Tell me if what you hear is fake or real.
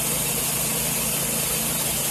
real